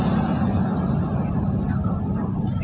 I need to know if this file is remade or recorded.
recorded